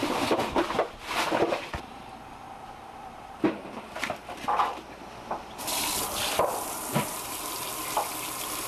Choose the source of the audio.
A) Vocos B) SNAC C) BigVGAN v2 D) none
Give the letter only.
C